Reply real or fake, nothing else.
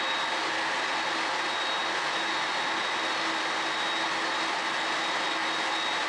real